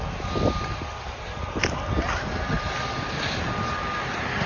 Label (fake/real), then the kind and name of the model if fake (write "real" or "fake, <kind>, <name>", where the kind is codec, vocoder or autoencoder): real